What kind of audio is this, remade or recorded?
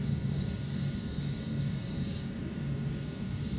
remade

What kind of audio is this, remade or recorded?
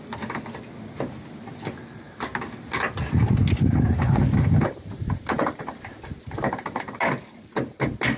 recorded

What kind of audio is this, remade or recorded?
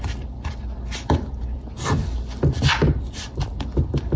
remade